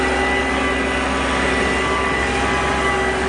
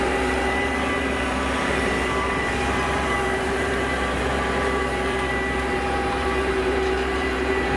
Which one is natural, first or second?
first